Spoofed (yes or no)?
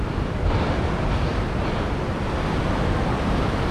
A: no